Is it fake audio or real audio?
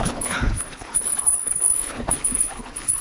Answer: fake